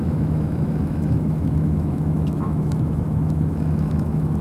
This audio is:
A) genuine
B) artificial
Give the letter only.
B